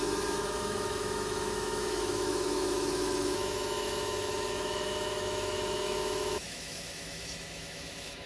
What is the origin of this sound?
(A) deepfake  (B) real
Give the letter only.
A